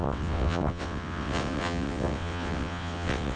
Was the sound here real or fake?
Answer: fake